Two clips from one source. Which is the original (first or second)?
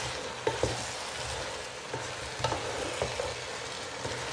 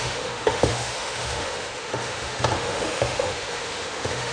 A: first